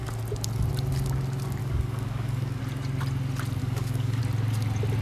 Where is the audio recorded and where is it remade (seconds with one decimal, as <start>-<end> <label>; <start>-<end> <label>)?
0.0-1.6 recorded; 1.6-2.6 remade; 2.6-3.6 recorded; 3.6-4.2 remade; 4.2-5.0 recorded